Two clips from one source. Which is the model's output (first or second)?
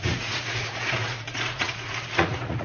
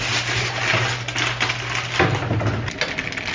first